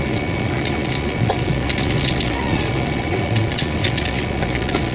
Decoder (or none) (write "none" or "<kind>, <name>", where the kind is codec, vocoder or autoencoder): vocoder, Vocos